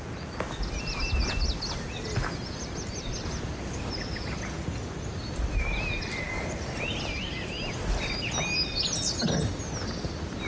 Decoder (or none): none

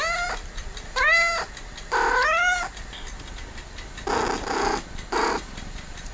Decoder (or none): none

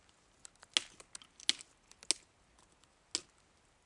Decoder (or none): none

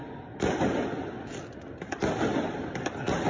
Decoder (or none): none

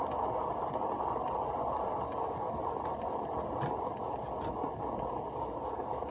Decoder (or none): none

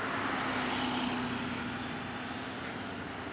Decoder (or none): none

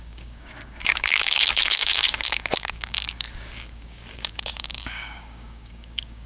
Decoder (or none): codec, DAC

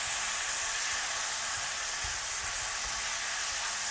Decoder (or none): none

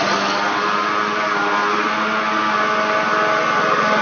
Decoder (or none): none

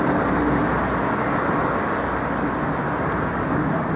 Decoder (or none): none